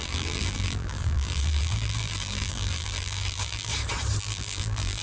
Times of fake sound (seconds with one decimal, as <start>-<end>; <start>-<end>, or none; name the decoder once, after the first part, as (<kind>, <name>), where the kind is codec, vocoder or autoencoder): 0.0-3.7 (vocoder, BigVGAN v2); 4.2-5.0